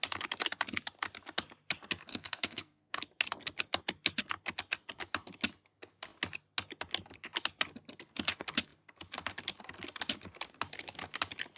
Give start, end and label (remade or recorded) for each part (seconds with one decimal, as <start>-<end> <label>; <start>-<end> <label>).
0.0-2.1 recorded; 2.1-3.0 remade; 3.0-11.6 recorded